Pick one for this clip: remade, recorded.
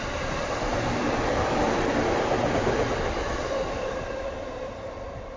remade